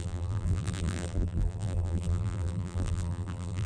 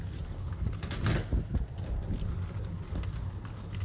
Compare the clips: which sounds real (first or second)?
second